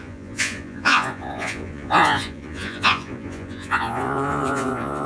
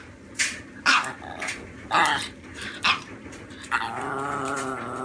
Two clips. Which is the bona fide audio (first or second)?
second